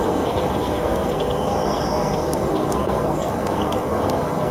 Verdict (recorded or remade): remade